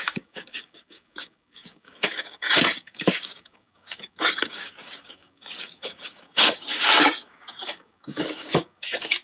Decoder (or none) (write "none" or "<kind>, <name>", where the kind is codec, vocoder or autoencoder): codec, DAC